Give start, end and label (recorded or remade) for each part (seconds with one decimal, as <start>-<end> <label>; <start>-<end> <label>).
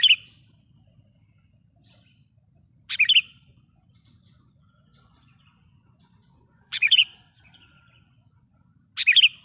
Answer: 0.0-3.5 recorded; 3.5-8.7 remade; 8.7-9.4 recorded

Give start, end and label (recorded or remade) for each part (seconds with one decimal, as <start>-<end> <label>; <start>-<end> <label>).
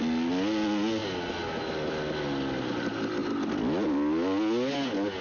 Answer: 0.0-5.2 recorded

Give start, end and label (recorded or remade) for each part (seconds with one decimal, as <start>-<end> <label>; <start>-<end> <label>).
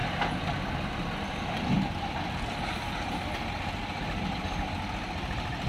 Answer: 0.0-5.7 recorded